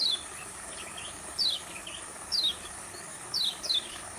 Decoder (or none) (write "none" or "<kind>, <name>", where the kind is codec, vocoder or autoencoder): codec, DAC